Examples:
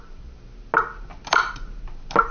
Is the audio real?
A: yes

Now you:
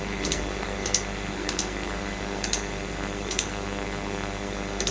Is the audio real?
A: no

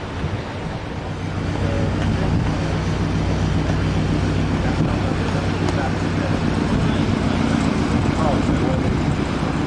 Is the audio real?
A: yes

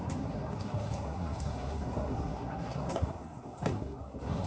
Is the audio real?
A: no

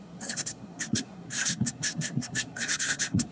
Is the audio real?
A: no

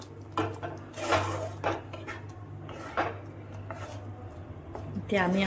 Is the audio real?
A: yes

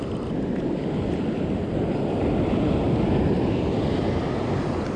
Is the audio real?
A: yes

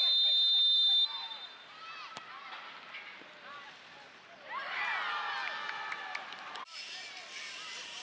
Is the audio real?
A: yes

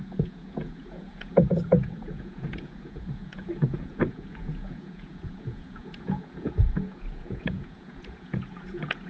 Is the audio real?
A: no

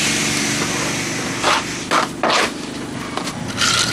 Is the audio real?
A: yes